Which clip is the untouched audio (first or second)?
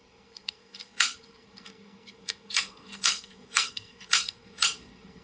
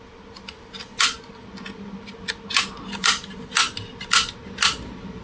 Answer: second